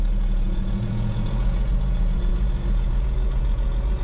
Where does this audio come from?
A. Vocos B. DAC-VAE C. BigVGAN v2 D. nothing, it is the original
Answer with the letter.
A